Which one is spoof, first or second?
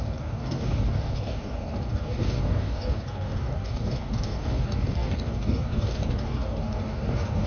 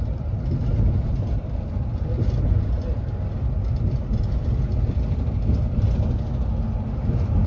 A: first